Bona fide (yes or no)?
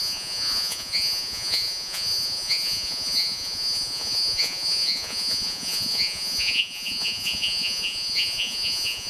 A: no